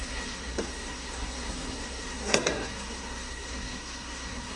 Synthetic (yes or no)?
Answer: yes